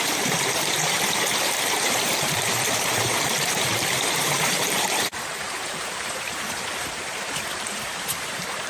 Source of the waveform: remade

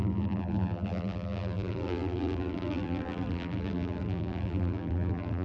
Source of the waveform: remade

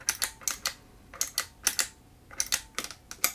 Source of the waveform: recorded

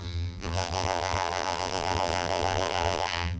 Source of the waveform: remade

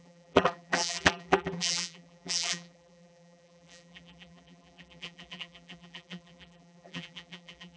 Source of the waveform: remade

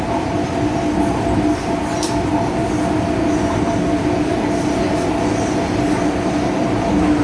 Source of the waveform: recorded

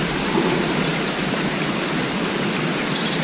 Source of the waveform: remade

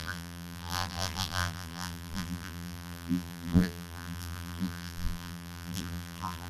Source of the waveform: remade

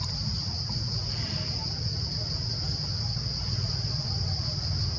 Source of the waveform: recorded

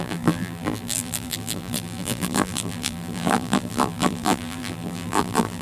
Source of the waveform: remade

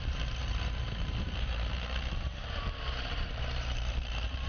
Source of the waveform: remade